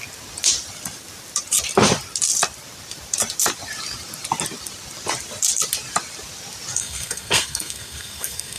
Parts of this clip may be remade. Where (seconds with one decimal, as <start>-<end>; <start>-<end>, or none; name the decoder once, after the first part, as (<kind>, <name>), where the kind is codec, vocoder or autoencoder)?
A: 6.8-8.6 (codec, SNAC)